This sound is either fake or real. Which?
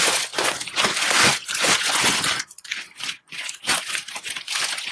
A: fake